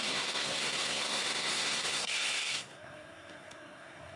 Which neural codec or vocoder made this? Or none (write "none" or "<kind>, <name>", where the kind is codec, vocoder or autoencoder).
codec, SNAC